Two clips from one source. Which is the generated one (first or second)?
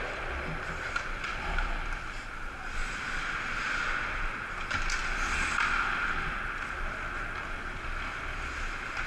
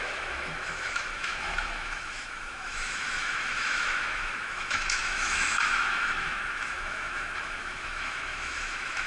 second